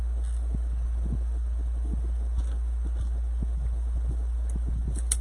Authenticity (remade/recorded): recorded